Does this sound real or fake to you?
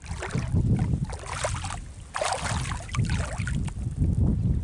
real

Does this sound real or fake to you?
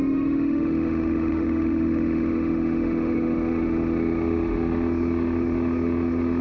fake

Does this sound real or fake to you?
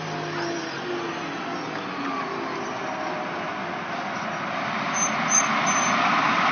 real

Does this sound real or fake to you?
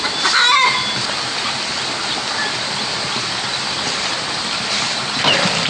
real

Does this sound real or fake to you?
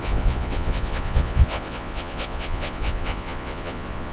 fake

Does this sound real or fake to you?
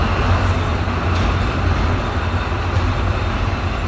real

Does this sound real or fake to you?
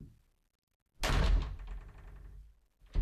real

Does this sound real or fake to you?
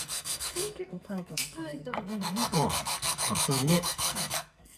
fake